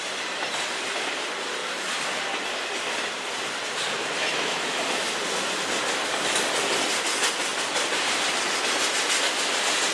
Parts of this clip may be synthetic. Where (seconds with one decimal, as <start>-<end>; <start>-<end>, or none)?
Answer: 4.3-4.8